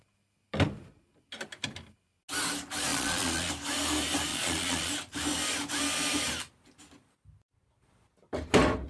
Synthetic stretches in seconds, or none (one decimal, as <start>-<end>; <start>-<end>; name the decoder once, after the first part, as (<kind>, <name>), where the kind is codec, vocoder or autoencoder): 2.9-3.5 (vocoder, Vocos); 4.3-4.9